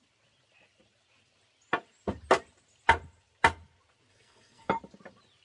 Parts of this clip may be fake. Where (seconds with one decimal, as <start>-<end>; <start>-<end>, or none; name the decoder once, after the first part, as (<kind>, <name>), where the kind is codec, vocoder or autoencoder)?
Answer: 4.1-4.7 (codec, SNAC)